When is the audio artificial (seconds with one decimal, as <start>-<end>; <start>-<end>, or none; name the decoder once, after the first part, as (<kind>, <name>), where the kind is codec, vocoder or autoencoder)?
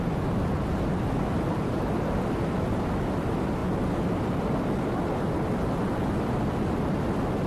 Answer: none